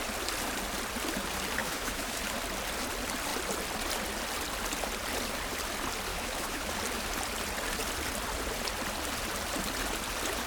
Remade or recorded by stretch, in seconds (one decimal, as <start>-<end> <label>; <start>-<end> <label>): 0.0-1.6 recorded; 1.6-2.2 remade; 2.2-6.1 recorded; 6.1-6.7 remade; 6.7-10.5 recorded